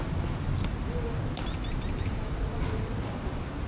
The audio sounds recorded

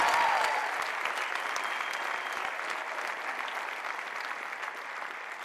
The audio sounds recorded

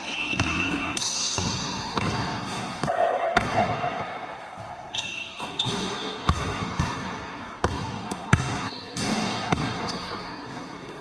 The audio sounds remade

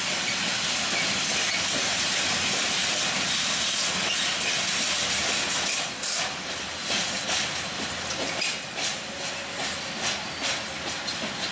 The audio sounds recorded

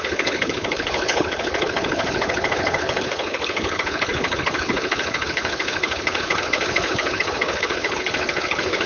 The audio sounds remade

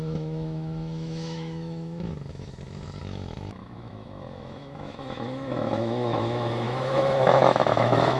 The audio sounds remade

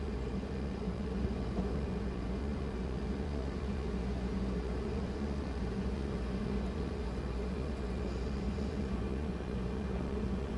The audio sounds remade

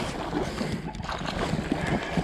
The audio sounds recorded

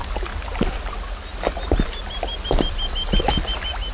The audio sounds recorded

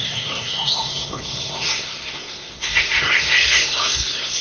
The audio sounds remade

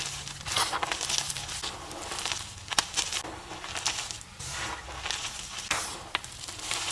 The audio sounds recorded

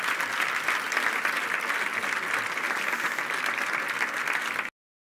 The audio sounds recorded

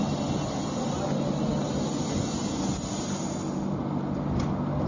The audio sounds recorded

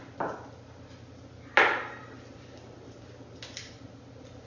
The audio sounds recorded